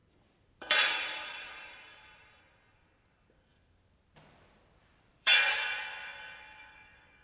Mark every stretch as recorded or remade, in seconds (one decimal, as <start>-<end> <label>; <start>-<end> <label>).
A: 0.0-2.4 remade; 2.4-4.8 recorded; 4.8-5.8 remade; 5.8-7.2 recorded